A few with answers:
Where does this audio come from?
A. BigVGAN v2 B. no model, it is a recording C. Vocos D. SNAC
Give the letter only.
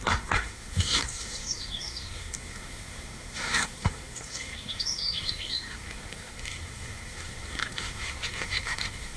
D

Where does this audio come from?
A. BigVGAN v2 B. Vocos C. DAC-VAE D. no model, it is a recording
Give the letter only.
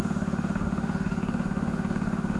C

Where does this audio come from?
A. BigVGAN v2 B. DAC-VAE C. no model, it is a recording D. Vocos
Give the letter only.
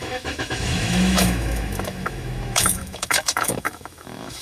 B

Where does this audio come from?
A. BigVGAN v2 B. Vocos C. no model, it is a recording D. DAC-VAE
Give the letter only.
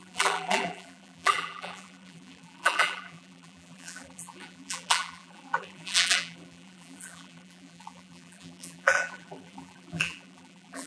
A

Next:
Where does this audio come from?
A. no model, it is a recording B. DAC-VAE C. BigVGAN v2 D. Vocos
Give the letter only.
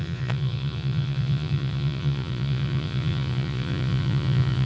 D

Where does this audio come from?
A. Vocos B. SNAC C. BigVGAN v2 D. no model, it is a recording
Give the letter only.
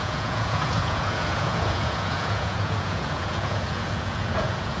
A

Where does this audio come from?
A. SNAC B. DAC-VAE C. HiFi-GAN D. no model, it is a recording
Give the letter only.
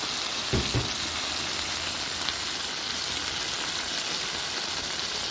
D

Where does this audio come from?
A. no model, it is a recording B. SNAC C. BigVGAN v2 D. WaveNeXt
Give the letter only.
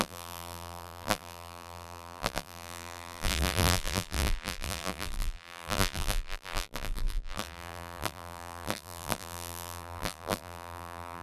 C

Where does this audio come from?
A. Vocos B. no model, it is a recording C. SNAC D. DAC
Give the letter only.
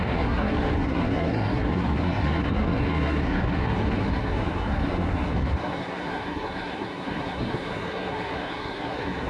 C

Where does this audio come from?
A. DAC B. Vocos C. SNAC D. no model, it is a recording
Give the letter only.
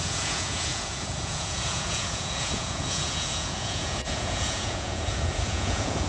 B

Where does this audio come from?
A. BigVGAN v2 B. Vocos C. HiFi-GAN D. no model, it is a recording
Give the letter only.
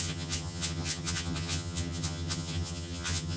C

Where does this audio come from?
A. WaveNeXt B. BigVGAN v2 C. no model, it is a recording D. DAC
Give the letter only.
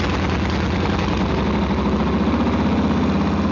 C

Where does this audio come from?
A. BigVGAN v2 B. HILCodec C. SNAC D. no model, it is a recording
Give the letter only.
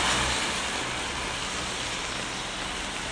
D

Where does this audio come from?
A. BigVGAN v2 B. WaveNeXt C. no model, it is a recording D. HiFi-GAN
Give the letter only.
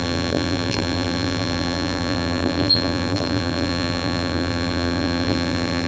A